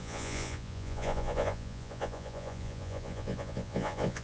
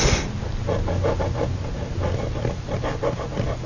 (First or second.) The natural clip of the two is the second